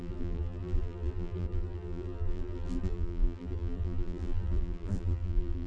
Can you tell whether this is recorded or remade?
remade